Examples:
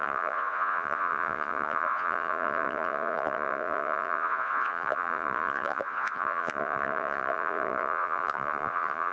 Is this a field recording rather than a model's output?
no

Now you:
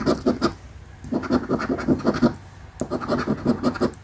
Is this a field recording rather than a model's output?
yes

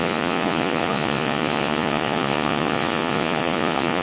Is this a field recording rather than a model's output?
no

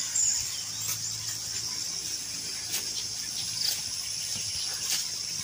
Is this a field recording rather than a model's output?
yes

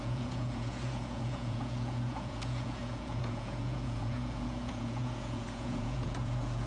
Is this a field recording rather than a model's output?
no